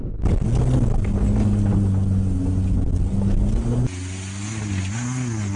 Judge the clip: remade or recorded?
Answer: recorded